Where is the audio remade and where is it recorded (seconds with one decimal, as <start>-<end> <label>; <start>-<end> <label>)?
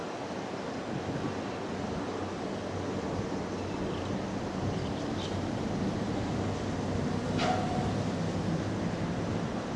0.0-9.8 recorded